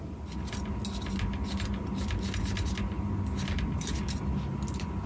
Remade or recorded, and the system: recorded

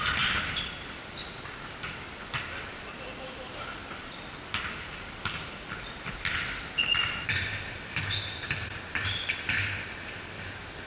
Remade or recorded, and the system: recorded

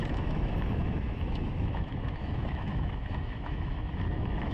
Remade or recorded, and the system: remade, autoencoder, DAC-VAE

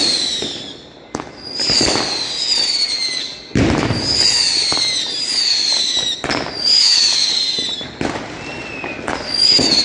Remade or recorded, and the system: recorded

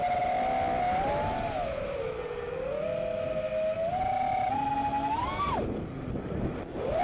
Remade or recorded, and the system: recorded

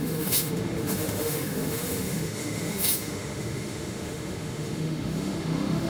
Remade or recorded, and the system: remade, autoencoder, DAC-VAE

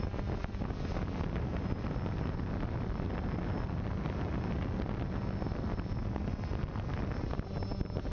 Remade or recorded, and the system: recorded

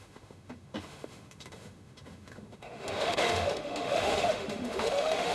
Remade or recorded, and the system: remade, autoencoder, DAC-VAE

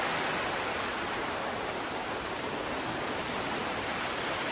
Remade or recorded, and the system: recorded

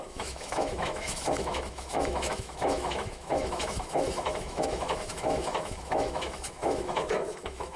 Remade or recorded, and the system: remade, autoencoder, DAC-VAE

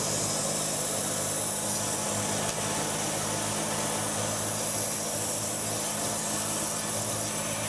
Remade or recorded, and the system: recorded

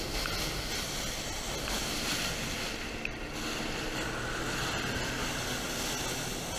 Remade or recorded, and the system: recorded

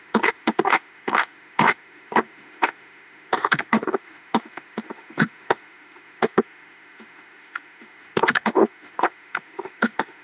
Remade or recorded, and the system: remade, autoencoder, DAC-VAE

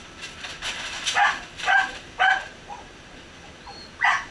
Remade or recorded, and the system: recorded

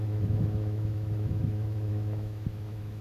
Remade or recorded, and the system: remade, autoencoder, DAC-VAE